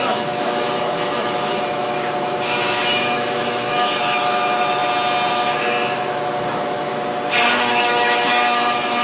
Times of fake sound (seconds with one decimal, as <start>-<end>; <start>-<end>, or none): 0.0-4.8; 5.3-6.9; 7.7-9.0